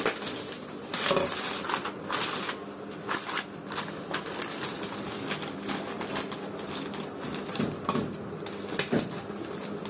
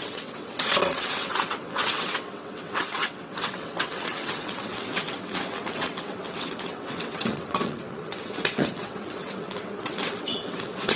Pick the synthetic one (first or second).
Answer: second